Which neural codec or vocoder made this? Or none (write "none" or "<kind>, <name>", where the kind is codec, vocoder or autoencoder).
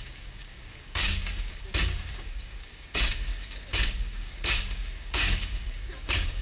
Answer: codec, DAC